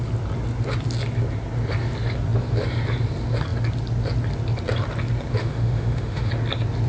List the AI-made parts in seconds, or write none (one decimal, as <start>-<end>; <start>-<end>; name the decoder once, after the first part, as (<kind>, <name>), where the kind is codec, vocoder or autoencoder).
5.4-6.3 (autoencoder, DAC-VAE)